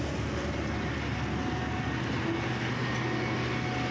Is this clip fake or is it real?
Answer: real